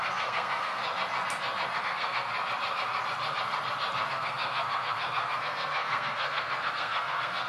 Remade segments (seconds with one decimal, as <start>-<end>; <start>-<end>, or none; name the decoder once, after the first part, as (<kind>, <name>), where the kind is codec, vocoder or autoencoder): 0.0-0.8 (codec, SNAC); 1.8-2.3; 4.1-7.5